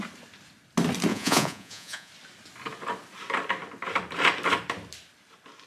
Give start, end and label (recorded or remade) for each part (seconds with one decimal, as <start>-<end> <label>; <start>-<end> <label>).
0.0-1.1 recorded; 1.1-2.1 remade; 2.1-5.7 recorded